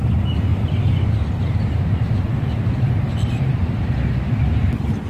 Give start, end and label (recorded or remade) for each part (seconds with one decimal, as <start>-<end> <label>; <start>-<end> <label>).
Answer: 0.0-0.5 recorded; 0.5-3.6 remade; 3.6-5.1 recorded